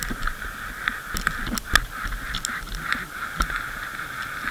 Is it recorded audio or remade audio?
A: recorded